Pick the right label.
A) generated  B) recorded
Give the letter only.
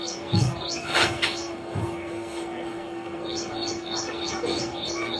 A